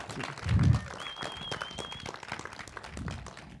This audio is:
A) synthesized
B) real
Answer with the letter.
B